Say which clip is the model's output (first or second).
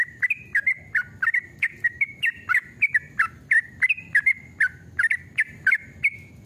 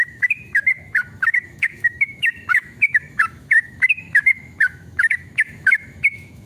second